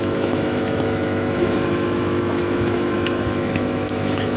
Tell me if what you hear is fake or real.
fake